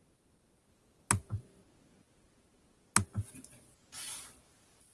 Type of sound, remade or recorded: recorded